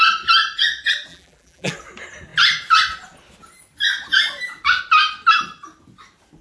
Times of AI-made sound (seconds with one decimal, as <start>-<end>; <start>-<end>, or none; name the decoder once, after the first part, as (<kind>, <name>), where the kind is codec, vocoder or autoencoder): 1.1-1.7 (vocoder, BigVGAN v2)